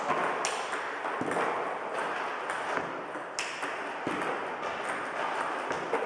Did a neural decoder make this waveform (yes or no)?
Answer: no